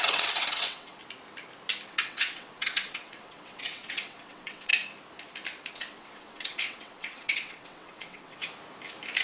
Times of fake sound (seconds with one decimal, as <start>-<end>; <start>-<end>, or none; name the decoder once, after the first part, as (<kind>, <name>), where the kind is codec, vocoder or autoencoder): 0.0-1.0 (vocoder, WaveNeXt); 1.9-4.7; 5.7-8.4